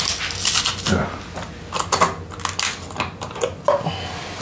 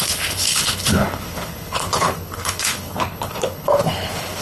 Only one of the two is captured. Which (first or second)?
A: first